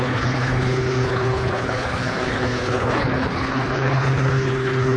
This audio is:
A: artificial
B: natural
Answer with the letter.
A